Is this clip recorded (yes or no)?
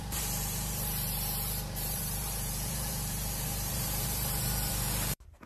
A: no